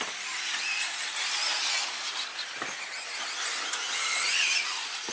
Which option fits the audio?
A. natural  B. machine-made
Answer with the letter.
A